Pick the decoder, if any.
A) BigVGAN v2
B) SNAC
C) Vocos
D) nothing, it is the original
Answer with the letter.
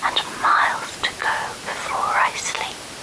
D